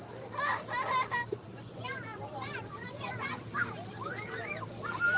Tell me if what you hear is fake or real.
fake